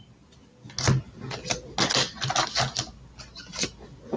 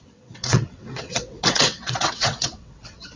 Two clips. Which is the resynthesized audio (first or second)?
second